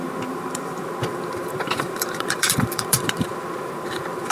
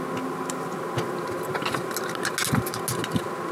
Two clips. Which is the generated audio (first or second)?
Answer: first